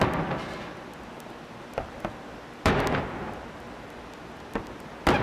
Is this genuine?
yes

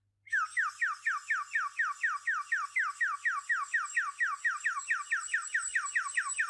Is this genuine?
yes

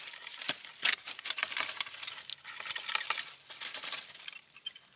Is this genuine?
yes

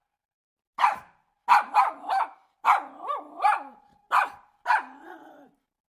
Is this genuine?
yes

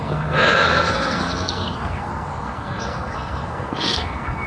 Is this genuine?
no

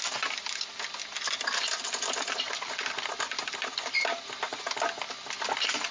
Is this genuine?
yes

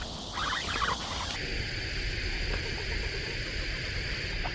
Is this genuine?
yes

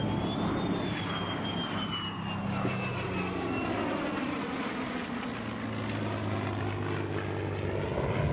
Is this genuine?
yes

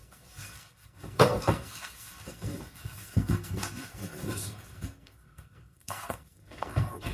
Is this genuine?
no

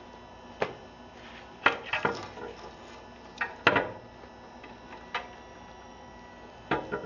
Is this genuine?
yes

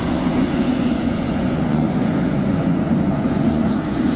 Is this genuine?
no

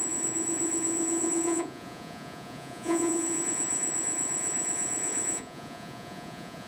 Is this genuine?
no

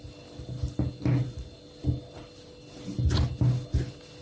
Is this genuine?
yes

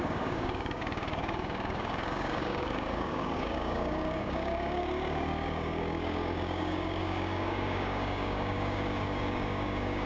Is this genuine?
no